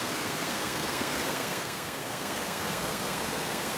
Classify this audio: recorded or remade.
remade